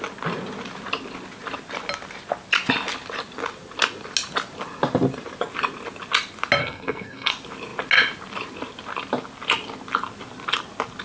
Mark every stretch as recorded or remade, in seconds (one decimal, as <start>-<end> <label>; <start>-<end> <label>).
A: 0.0-6.6 recorded; 6.6-7.3 remade; 7.3-11.0 recorded

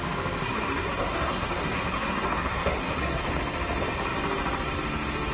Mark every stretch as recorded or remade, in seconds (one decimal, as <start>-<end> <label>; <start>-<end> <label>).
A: 0.0-0.4 recorded; 0.4-3.2 remade; 3.2-5.3 recorded